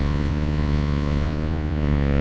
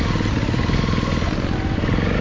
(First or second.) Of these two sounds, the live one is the second